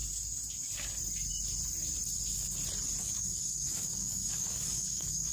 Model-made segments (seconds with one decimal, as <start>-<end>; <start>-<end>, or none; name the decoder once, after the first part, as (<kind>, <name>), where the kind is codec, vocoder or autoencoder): 3.0-5.3 (codec, DAC)